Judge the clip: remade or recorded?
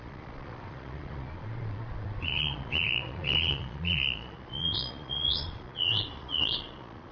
remade